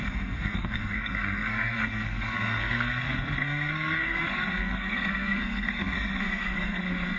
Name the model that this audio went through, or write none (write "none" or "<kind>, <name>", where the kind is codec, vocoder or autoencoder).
codec, SNAC